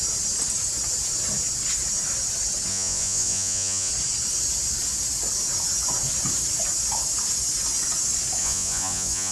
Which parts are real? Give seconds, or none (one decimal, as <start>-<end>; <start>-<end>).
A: 0.0-2.7; 3.9-8.4